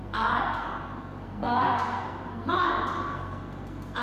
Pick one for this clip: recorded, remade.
remade